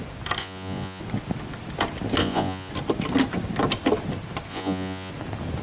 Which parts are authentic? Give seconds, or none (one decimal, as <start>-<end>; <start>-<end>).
0.0-0.4; 1.0-2.2; 2.7-4.5; 5.1-5.6

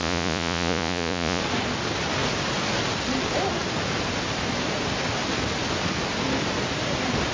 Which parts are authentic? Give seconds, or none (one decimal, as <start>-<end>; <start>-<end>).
1.4-7.3